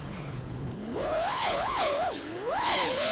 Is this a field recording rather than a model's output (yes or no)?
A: no